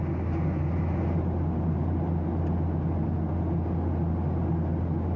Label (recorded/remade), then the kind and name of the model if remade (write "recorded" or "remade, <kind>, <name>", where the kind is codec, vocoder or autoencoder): recorded